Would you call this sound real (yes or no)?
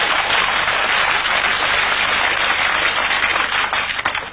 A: yes